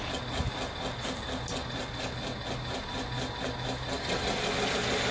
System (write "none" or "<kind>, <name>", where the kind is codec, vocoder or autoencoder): none